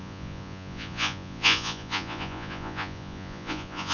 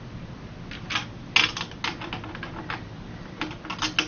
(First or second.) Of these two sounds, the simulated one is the first